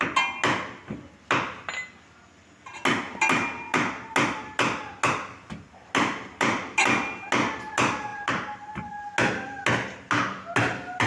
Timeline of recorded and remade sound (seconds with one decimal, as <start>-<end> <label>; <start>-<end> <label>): 0.0-11.1 recorded